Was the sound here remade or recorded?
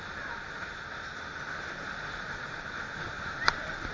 recorded